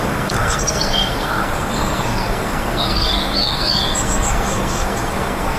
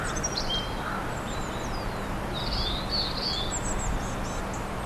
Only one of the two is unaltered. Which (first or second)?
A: second